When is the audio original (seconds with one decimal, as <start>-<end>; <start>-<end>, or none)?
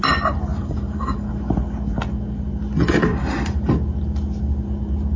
0.0-0.5; 1.3-3.1; 3.7-5.2